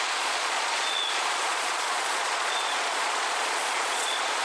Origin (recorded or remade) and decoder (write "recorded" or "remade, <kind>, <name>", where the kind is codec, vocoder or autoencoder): remade, vocoder, Vocos